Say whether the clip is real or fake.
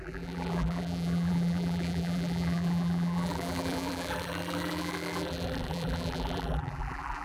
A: fake